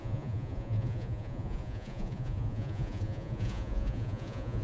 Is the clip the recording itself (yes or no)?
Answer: no